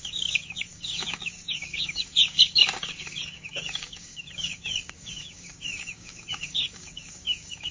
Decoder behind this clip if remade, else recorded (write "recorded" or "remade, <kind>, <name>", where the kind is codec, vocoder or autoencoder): remade, codec, DAC